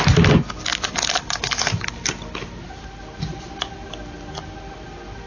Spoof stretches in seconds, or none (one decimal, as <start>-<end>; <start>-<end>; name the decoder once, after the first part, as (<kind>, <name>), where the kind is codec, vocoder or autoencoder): none